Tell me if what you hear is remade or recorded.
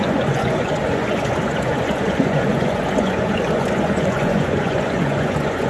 remade